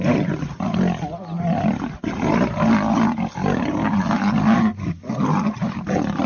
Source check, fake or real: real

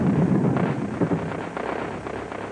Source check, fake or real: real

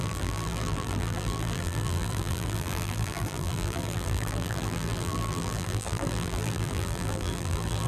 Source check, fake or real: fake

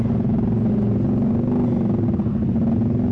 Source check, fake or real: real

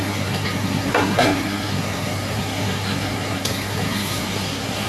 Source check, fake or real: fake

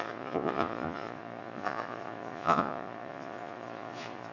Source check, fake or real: fake